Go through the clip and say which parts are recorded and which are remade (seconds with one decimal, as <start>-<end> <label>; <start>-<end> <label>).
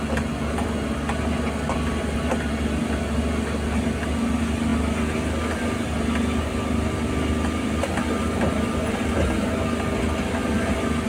0.0-11.1 recorded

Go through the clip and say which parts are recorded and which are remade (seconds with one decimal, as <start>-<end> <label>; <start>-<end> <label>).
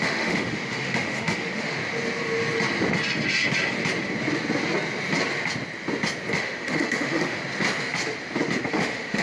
0.0-1.8 remade; 1.8-6.3 recorded; 6.3-7.4 remade; 7.4-8.7 recorded; 8.7-9.2 remade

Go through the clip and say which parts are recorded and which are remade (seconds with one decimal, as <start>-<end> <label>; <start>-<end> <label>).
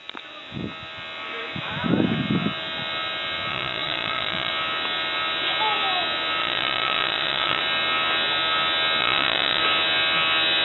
0.0-3.5 recorded; 3.5-4.5 remade; 4.5-6.4 recorded; 6.4-7.6 remade; 7.6-9.0 recorded; 9.0-9.6 remade; 9.6-10.6 recorded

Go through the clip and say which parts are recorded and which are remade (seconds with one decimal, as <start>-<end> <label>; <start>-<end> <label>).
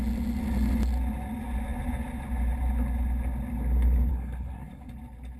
0.0-4.1 recorded; 4.1-4.9 remade; 4.9-5.4 recorded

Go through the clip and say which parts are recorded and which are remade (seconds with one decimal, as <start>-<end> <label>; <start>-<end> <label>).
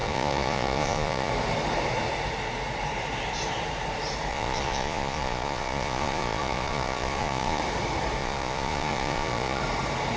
0.0-1.3 remade; 1.3-4.3 recorded; 4.3-7.6 remade; 7.6-8.2 recorded; 8.2-9.6 remade; 9.6-10.2 recorded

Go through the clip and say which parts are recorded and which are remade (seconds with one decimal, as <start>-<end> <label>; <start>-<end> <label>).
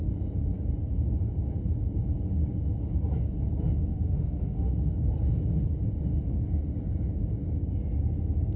0.0-3.9 recorded; 3.9-4.7 remade; 4.7-8.6 recorded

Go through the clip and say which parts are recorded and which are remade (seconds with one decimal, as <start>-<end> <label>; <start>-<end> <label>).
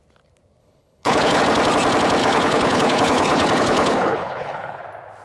0.0-0.6 recorded; 0.6-1.4 remade; 1.4-2.2 recorded; 2.2-4.8 remade; 4.8-5.2 recorded